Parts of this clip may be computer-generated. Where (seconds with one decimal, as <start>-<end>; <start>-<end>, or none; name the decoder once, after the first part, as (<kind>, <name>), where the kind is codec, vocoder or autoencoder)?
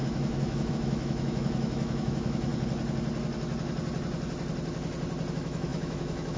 0.0-2.5 (autoencoder, DAC-VAE); 5.3-6.4